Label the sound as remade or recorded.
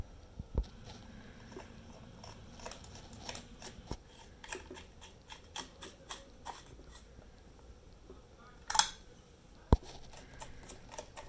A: recorded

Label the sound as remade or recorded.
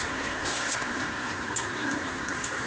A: remade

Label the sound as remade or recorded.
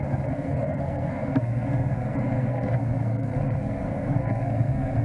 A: remade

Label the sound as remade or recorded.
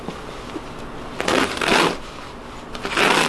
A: recorded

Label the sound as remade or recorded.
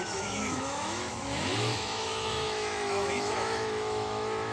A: remade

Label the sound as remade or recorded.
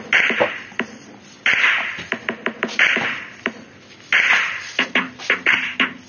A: recorded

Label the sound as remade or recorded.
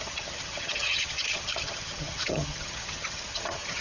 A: remade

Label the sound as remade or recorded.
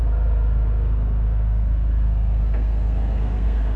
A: remade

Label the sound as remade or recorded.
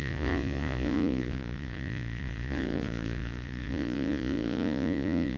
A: remade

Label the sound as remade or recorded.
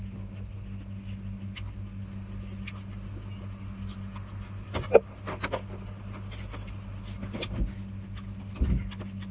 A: recorded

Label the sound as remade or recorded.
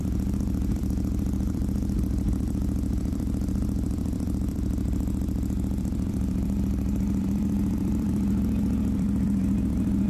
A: remade